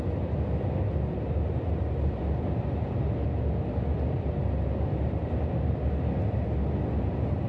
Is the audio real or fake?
real